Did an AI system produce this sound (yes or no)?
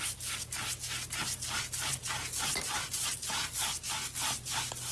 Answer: no